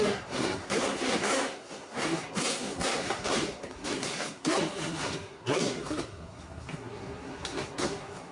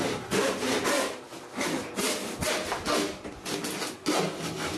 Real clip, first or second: second